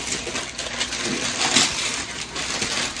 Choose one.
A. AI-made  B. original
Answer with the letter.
B